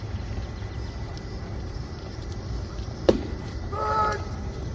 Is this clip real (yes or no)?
no